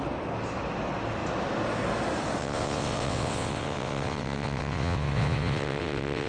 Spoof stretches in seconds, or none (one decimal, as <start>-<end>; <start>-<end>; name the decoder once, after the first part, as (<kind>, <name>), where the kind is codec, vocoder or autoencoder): 2.4-6.3 (vocoder, WaveNeXt)